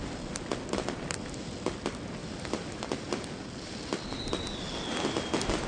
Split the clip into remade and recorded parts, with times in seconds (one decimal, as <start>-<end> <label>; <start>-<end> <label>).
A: 0.0-2.2 recorded; 2.2-4.2 remade; 4.2-5.7 recorded